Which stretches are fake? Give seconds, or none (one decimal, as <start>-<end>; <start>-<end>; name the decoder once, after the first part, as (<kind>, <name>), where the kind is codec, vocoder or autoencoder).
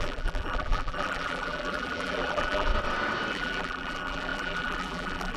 0.0-2.7 (vocoder, BigVGAN v2); 3.3-5.4